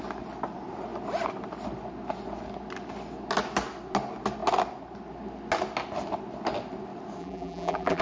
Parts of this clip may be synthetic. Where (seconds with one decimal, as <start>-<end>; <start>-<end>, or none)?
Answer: 7.2-8.0